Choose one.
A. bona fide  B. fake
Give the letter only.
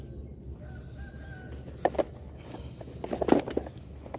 A